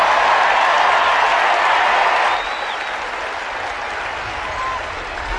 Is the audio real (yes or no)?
yes